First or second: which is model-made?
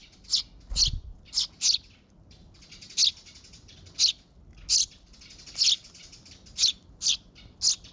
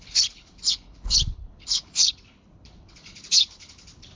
second